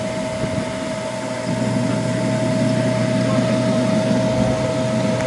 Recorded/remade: recorded